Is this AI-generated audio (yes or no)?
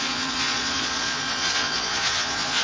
yes